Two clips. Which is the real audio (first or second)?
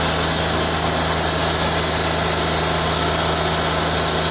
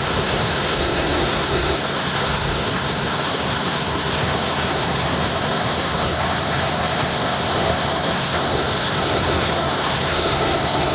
first